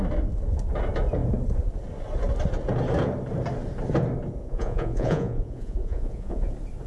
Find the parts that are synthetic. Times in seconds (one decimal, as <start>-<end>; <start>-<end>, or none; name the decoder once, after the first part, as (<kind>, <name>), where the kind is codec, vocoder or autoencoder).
4.4-6.5 (vocoder, Vocos)